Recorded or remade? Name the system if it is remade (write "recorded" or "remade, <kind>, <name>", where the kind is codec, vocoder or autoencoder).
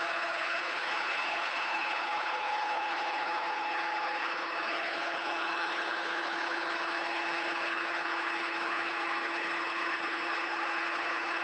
remade, codec, HILCodec